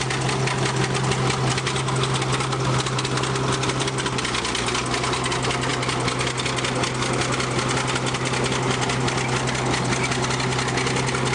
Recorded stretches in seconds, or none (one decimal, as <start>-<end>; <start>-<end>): 0.0-11.3